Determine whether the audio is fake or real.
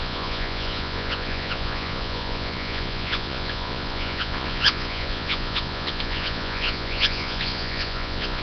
fake